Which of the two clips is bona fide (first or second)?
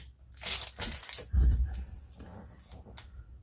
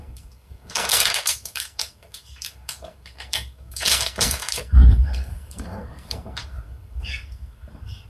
first